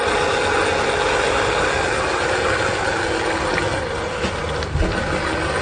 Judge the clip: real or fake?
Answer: real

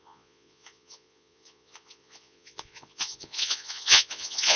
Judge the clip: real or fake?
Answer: fake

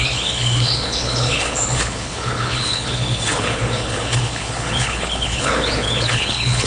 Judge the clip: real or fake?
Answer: fake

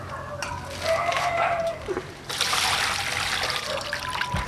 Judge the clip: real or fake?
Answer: real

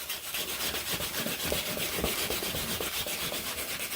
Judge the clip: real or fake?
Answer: real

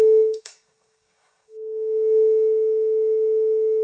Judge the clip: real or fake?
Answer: fake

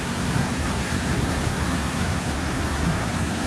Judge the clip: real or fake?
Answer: fake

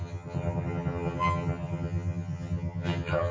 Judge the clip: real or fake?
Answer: fake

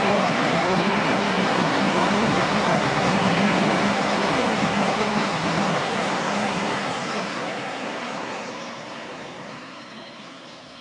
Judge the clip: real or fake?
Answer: fake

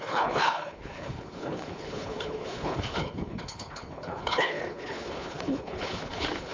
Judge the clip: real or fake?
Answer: fake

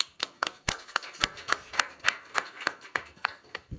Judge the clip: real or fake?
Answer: fake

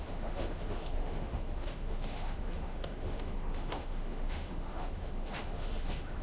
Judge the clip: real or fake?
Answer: fake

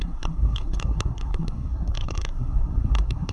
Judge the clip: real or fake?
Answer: fake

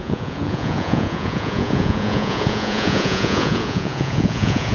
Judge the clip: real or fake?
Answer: fake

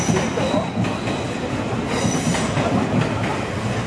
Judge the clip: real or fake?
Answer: real